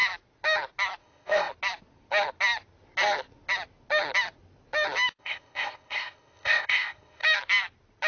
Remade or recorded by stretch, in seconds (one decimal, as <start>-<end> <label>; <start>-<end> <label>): 0.0-1.0 recorded; 1.0-1.5 remade; 1.5-5.2 recorded; 5.2-7.2 remade; 7.2-8.1 recorded